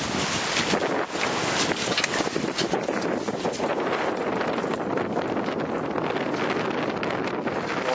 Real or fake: real